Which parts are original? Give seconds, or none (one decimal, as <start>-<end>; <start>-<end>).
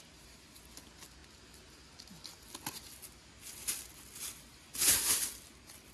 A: 0.0-5.9